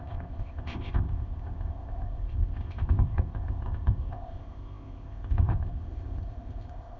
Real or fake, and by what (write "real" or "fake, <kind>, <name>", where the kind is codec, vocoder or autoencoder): fake, codec, ZipCodec